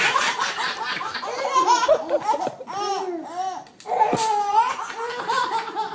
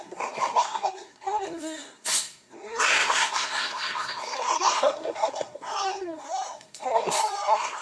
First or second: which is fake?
second